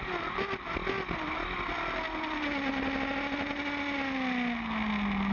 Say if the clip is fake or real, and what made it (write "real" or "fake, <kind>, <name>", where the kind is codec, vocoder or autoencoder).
real